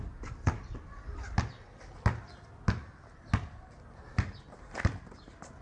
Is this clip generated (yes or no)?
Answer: no